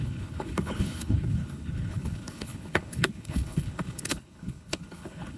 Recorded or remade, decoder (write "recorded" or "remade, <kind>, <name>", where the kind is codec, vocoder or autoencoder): remade, codec, HILCodec